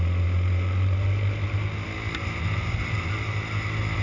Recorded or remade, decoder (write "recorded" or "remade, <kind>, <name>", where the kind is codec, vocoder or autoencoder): recorded